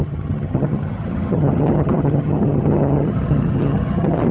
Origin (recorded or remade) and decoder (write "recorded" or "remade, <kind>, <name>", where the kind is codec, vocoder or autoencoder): remade, vocoder, HiFi-GAN